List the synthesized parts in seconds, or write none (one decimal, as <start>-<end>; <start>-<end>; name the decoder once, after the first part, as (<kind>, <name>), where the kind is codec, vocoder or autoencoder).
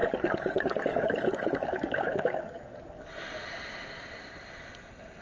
0.0-3.1 (codec, DAC)